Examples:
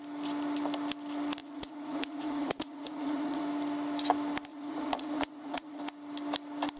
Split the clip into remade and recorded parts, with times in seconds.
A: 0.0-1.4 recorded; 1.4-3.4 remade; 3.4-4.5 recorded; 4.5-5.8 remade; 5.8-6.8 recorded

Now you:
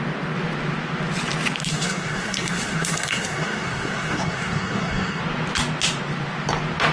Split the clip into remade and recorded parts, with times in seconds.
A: 0.0-1.7 recorded; 1.7-5.2 remade; 5.2-6.9 recorded

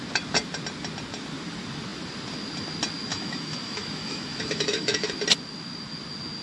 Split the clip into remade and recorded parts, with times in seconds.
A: 0.0-3.1 recorded; 3.1-5.1 remade; 5.1-6.4 recorded

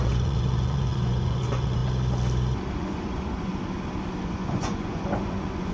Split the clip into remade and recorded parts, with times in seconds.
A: 0.0-1.8 remade; 1.8-2.7 recorded; 2.7-3.5 remade; 3.5-4.2 recorded; 4.2-5.7 remade